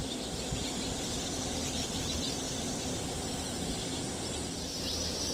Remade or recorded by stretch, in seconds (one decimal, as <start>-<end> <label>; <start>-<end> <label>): 0.0-5.3 recorded